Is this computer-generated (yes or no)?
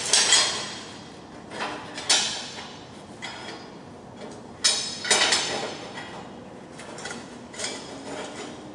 no